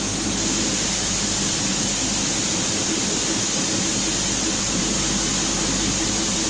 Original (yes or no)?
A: yes